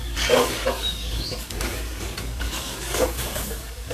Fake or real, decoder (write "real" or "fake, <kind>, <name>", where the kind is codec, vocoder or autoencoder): fake, codec, DAC